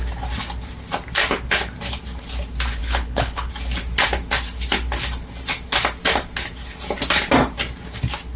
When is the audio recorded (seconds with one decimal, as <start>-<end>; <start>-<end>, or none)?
0.0-2.8; 3.5-8.4